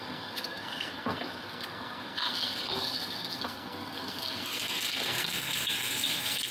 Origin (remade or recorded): remade